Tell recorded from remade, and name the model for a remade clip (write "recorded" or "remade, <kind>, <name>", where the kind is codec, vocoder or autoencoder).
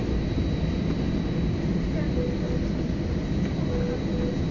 recorded